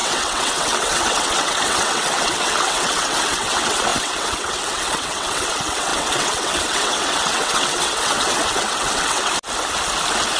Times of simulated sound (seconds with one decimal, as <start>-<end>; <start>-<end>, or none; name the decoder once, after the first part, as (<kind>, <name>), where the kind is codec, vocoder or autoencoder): 0.0-9.3 (vocoder, WaveNeXt)